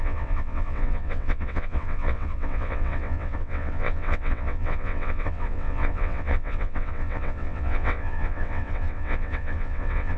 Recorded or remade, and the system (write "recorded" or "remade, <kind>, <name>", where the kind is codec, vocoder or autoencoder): remade, vocoder, WaveNeXt